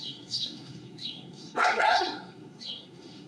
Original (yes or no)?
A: no